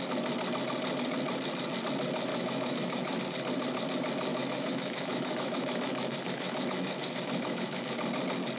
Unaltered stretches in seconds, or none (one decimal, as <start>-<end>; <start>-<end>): 0.0-2.3; 3.2-4.3; 7.8-8.6